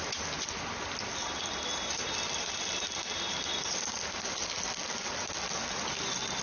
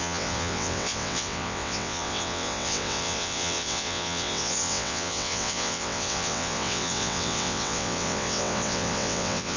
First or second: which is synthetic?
second